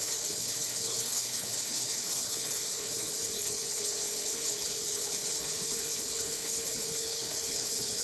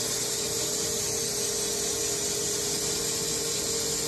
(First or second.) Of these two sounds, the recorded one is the second